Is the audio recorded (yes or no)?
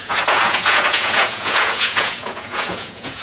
no